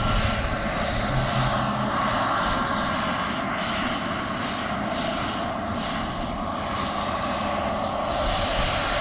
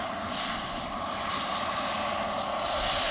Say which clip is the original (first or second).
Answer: first